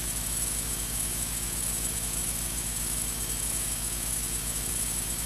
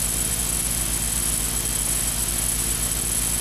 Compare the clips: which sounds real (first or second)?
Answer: second